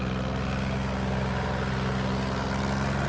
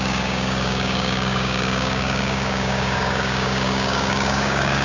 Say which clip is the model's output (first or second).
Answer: second